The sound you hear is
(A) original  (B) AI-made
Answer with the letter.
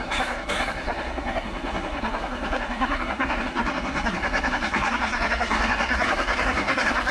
B